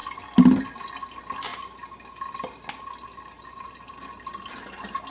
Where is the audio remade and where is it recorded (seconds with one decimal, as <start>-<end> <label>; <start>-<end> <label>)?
0.0-5.1 recorded